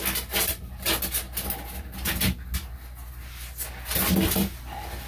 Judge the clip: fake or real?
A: real